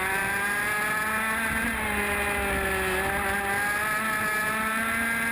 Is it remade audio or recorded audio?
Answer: recorded